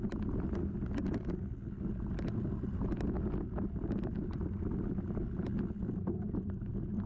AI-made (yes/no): no